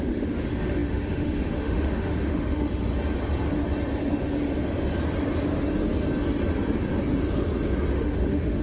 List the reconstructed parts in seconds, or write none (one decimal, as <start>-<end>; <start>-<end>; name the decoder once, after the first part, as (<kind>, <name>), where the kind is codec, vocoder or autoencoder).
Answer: 0.0-2.9 (autoencoder, DAC-VAE); 7.9-8.6